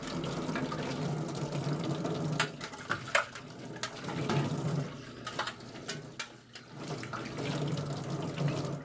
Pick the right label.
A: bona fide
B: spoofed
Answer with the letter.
A